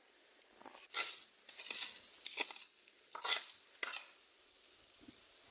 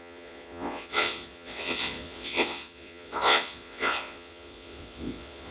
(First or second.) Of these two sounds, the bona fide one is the first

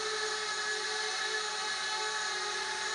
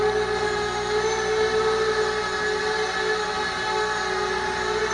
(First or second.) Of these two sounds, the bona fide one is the second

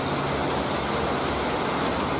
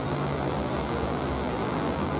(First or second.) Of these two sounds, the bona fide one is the first